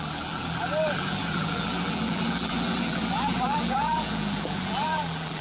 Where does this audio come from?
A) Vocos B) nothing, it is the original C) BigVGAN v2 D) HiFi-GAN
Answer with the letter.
C